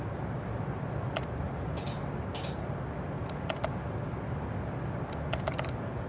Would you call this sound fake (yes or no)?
no